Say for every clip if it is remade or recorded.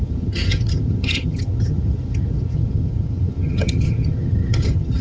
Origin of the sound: remade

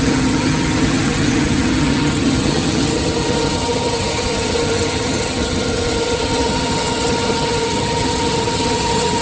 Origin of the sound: remade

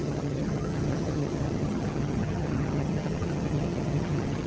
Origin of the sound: remade